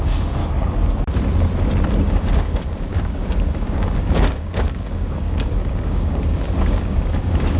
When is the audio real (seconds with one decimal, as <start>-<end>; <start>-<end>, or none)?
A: 0.4-2.1

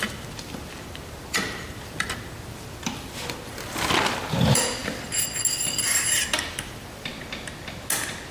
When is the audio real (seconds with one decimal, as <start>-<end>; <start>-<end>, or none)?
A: 7.1-8.3

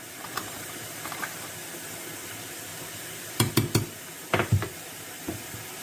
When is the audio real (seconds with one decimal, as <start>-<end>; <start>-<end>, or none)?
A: 0.0-5.8

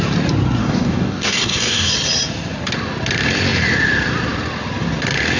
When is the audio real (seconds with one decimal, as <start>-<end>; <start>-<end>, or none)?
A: 0.0-0.6; 1.9-5.4

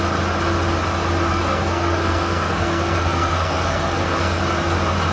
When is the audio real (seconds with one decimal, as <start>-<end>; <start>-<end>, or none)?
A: 0.0-1.3; 4.4-5.1